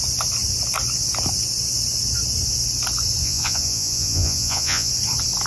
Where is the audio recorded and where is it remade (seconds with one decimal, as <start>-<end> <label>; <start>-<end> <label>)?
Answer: 0.0-3.2 recorded; 3.2-4.9 remade; 4.9-5.5 recorded